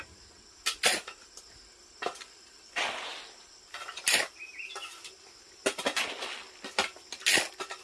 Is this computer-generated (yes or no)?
no